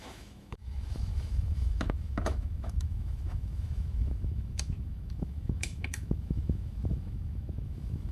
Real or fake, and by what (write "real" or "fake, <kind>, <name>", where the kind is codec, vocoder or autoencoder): fake, autoencoder, DAC-VAE